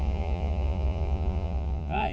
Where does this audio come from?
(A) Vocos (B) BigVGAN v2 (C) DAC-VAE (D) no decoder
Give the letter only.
A